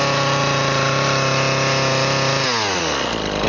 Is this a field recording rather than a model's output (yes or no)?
yes